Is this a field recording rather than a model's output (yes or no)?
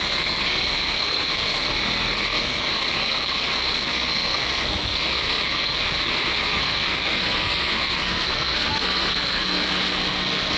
no